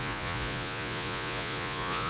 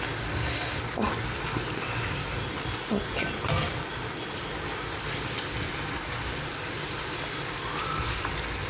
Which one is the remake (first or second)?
first